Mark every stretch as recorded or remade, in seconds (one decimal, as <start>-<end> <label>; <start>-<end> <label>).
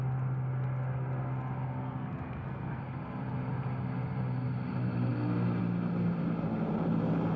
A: 0.0-1.8 recorded; 1.8-2.8 remade; 2.8-7.4 recorded